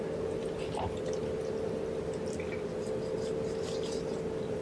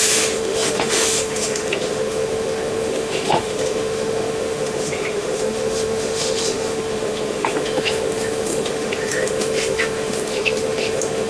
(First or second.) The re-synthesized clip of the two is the second